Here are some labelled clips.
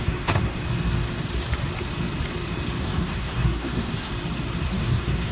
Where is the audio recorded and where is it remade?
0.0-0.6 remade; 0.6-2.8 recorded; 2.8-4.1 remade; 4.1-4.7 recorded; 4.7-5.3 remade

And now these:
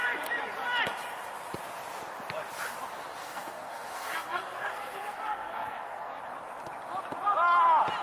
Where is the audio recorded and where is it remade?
0.0-3.2 recorded; 3.2-6.2 remade; 6.2-8.0 recorded

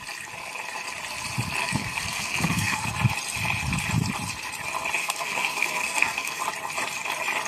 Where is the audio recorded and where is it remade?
0.0-1.6 recorded; 1.6-2.9 remade; 2.9-5.0 recorded; 5.0-6.4 remade; 6.4-7.5 recorded

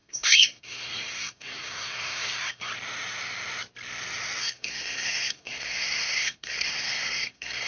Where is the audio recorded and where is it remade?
0.0-2.7 remade; 2.7-4.4 recorded; 4.4-7.7 remade